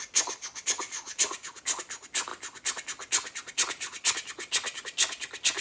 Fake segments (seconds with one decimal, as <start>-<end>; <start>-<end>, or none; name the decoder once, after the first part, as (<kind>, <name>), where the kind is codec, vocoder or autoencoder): none